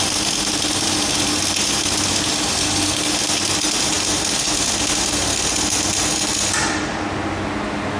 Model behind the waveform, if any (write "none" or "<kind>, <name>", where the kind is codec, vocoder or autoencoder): none